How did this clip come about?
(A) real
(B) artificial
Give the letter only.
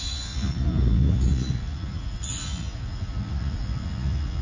B